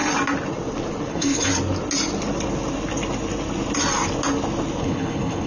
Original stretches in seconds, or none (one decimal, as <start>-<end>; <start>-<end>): 0.0-1.1; 1.5-4.8